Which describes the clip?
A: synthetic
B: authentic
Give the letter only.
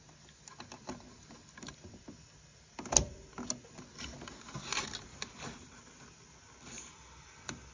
B